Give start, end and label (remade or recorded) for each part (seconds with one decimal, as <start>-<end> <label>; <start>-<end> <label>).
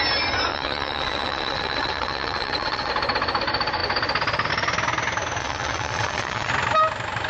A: 0.0-0.5 recorded; 0.5-2.9 remade; 2.9-5.4 recorded; 5.4-6.5 remade; 6.5-7.3 recorded